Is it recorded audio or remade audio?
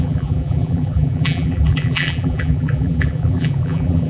remade